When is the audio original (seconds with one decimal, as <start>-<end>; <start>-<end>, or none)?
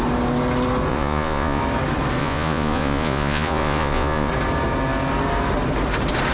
0.0-0.9; 1.6-2.2; 4.3-6.3